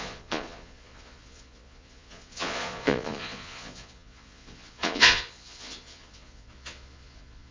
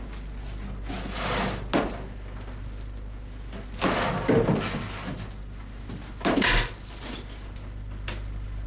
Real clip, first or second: second